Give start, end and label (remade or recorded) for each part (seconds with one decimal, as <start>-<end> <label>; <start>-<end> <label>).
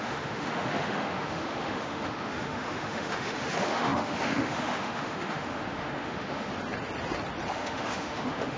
0.0-6.5 remade; 6.5-7.5 recorded; 7.5-8.6 remade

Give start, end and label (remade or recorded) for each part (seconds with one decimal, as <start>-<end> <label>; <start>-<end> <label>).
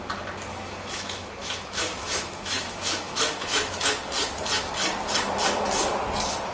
0.0-0.5 recorded; 0.5-3.9 remade; 3.9-6.5 recorded